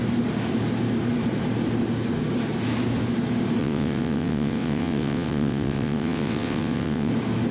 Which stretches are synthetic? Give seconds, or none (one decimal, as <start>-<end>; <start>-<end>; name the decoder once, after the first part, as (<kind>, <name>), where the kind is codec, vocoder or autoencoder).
3.6-7.1 (vocoder, WaveNeXt)